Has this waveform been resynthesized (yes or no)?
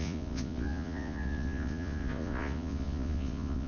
yes